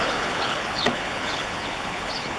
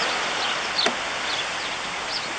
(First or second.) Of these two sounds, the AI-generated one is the first